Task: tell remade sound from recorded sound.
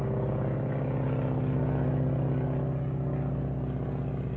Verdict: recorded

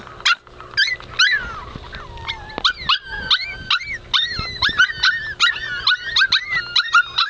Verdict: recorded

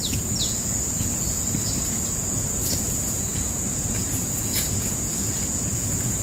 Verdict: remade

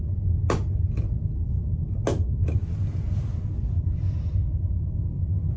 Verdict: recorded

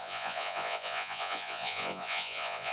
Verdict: remade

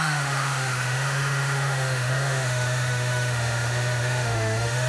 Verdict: remade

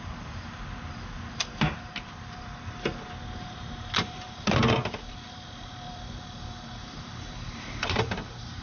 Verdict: remade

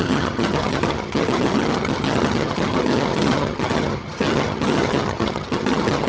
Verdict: remade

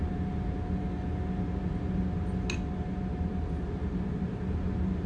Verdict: recorded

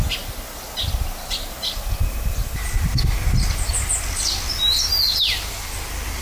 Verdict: recorded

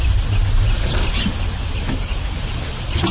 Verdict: recorded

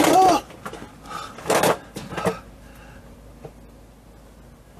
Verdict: recorded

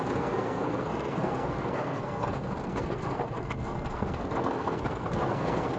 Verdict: remade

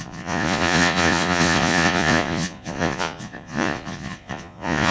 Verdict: remade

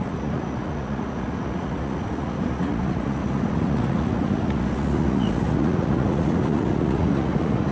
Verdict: remade